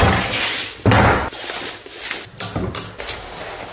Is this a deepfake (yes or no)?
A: no